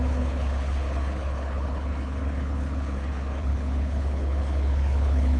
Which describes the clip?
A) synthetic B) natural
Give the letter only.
A